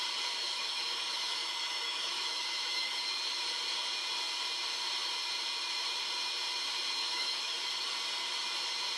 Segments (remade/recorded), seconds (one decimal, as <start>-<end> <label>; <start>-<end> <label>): 0.0-0.4 recorded; 0.4-3.0 remade; 3.0-7.0 recorded; 7.0-7.9 remade; 7.9-9.0 recorded